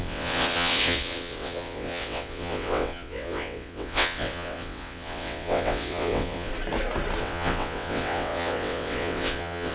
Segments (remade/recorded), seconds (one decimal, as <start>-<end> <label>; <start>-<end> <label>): 0.0-6.5 remade; 6.5-7.2 recorded; 7.2-9.7 remade